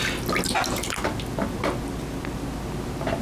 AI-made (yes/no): no